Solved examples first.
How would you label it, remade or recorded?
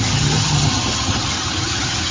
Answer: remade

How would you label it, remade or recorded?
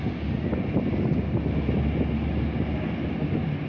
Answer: recorded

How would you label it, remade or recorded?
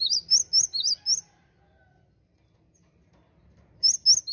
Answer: recorded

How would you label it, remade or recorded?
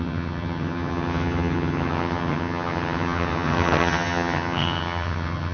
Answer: remade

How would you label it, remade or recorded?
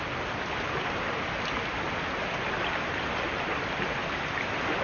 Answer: recorded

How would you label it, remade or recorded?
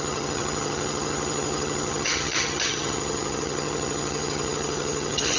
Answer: remade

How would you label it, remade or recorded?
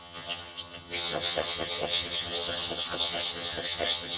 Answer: remade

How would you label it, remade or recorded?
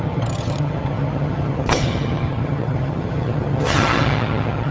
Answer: remade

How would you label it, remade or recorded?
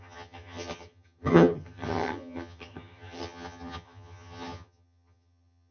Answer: remade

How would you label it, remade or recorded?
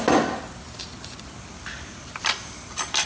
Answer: recorded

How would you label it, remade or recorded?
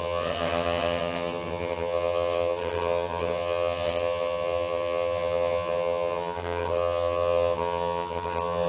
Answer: remade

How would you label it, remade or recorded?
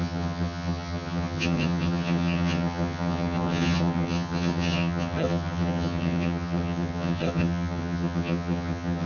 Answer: remade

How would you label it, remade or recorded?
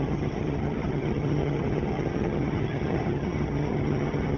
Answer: remade